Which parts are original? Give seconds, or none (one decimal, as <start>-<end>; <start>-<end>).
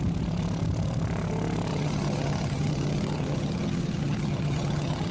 0.0-1.7